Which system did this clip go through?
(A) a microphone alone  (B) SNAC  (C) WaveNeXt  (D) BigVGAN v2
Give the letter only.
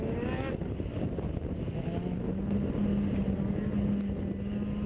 A